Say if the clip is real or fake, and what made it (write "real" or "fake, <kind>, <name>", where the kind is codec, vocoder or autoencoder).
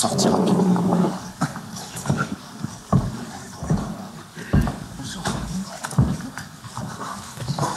fake, codec, DAC